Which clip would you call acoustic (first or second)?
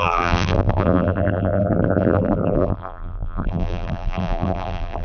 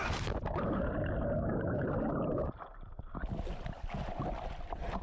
second